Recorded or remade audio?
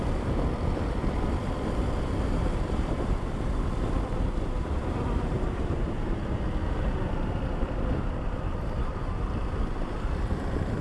remade